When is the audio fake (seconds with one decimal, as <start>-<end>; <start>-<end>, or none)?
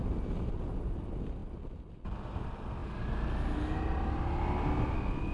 none